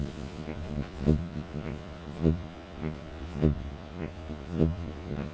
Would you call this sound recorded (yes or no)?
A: no